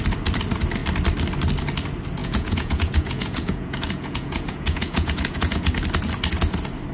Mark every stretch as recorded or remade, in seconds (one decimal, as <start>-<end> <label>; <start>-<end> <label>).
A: 0.0-2.2 recorded; 2.2-5.7 remade; 5.7-6.9 recorded